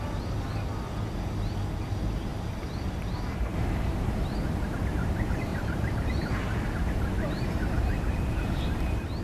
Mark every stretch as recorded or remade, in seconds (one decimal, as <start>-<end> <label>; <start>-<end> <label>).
0.0-2.3 recorded; 2.3-4.2 remade; 4.2-5.5 recorded; 5.5-9.2 remade